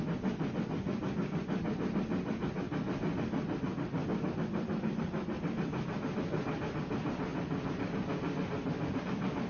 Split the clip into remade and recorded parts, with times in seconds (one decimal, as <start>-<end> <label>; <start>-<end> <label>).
0.0-9.5 recorded